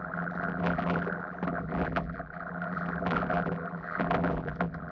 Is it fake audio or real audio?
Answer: fake